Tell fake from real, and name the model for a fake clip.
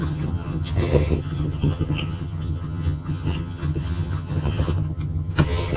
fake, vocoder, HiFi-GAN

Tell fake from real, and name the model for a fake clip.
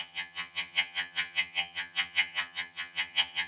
fake, vocoder, HiFi-GAN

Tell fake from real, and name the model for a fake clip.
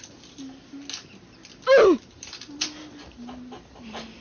real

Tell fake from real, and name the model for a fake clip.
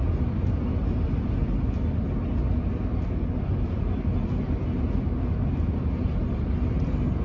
real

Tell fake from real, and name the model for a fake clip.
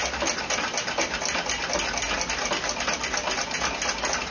real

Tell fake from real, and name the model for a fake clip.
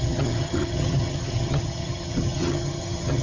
fake, vocoder, HiFi-GAN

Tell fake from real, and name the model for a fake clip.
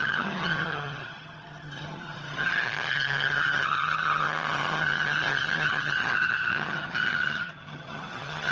fake, vocoder, HiFi-GAN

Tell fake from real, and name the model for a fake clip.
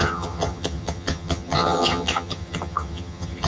fake, vocoder, HiFi-GAN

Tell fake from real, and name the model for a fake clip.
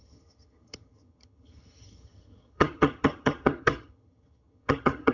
fake, vocoder, HiFi-GAN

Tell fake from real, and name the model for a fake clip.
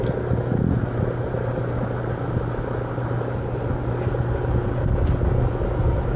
real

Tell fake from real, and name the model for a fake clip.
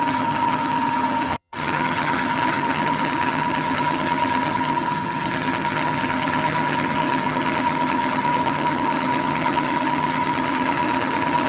fake, vocoder, HiFi-GAN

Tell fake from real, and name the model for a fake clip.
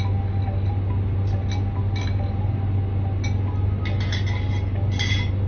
real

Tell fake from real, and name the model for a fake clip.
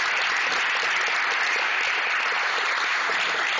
real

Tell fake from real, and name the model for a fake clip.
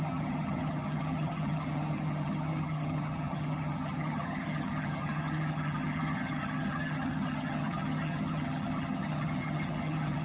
fake, vocoder, HiFi-GAN